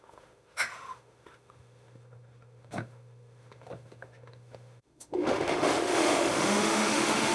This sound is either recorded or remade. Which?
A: remade